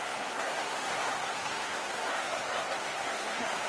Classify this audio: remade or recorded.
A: remade